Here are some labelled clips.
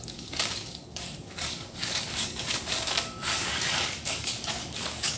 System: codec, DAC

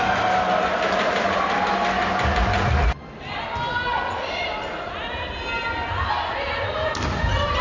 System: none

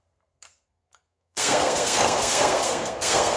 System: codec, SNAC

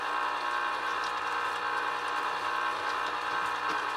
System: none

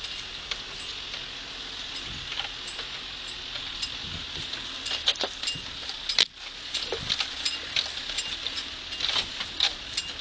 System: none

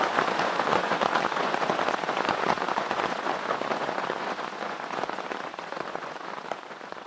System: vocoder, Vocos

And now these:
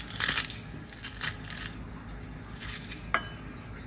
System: none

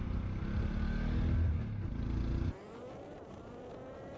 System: none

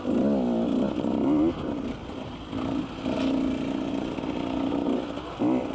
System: none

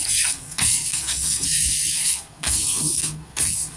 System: codec, SNAC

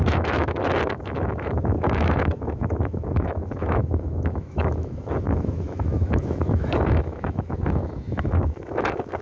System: autoencoder, DAC-VAE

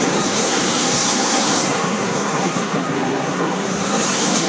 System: codec, SNAC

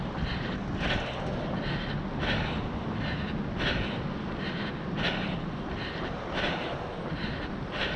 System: none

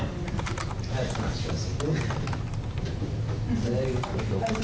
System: none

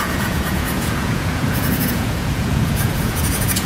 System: vocoder, Vocos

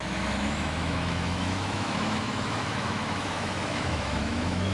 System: autoencoder, DAC-VAE